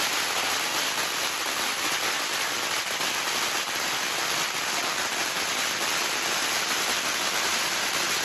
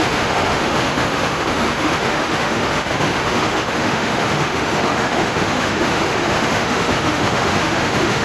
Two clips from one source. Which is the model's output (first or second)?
second